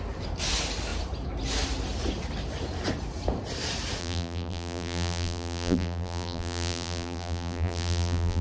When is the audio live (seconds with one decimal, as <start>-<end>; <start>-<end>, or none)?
0.0-4.0

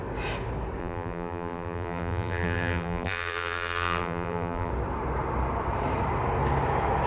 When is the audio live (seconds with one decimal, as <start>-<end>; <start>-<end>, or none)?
0.0-0.8; 4.7-7.1